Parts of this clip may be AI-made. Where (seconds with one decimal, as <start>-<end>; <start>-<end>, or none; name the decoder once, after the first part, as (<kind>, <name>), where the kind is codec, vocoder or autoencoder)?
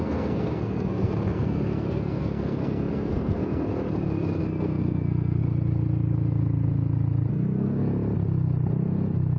0.0-3.7 (codec, SNAC); 4.4-5.4; 7.3-7.9